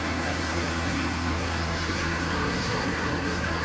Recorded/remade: remade